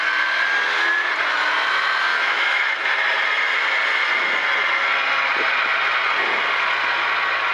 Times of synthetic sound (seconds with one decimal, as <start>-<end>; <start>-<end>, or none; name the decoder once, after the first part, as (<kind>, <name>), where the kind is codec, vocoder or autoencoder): 2.1-2.7 (autoencoder, DAC-VAE)